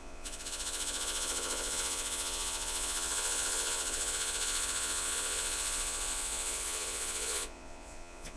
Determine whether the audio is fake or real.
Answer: fake